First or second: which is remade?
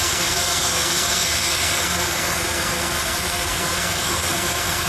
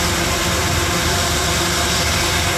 first